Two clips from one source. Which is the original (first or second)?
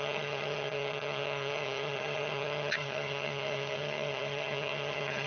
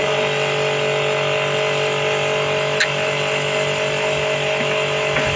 second